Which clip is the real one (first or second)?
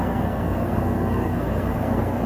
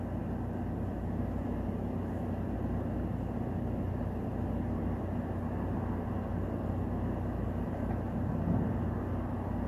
second